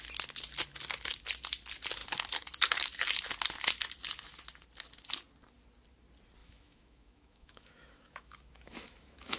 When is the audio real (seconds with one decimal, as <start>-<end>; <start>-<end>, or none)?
0.0-6.4